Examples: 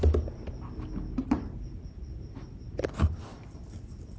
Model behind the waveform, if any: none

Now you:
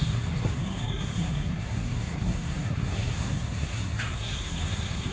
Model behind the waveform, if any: codec, SNAC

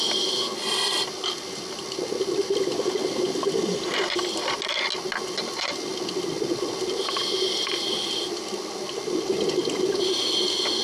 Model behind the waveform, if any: none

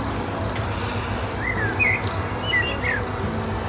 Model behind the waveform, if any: none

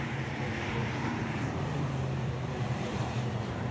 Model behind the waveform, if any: vocoder, BigVGAN v2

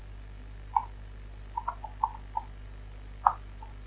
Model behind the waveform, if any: none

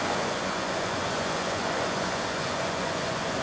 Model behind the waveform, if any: vocoder, Vocos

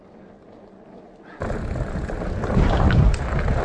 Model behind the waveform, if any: none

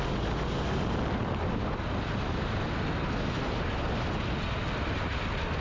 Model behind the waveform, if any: none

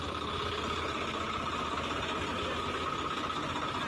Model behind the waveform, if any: none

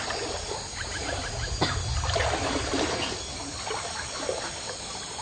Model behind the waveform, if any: none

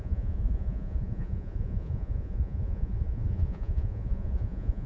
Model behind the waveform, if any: vocoder, Vocos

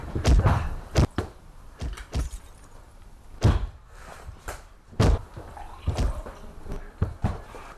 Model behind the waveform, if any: vocoder, BigVGAN v2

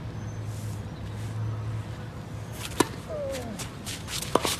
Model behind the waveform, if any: none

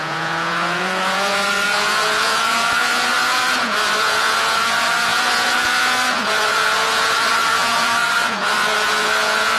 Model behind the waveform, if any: vocoder, Vocos